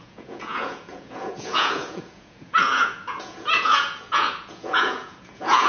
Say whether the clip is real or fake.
fake